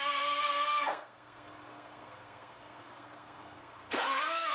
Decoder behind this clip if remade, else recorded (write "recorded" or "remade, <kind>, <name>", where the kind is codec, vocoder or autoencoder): remade, codec, SNAC